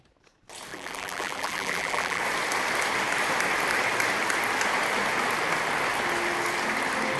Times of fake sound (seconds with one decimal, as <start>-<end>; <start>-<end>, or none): 0.7-2.2